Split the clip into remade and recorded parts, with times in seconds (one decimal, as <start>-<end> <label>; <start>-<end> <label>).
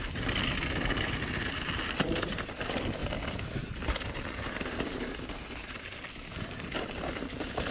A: 0.0-3.0 remade; 3.0-6.5 recorded; 6.5-7.7 remade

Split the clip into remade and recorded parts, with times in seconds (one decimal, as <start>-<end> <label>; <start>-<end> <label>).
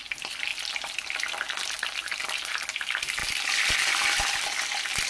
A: 0.0-0.5 recorded; 0.5-2.5 remade; 2.5-3.2 recorded; 3.2-4.6 remade; 4.6-5.1 recorded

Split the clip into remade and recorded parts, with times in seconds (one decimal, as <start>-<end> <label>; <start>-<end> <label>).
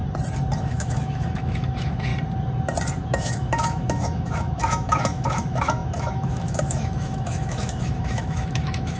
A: 0.0-0.6 recorded; 0.6-2.1 remade; 2.1-3.0 recorded; 3.0-9.0 remade